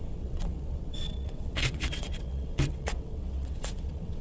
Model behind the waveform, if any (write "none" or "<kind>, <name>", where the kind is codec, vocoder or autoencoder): vocoder, WaveNeXt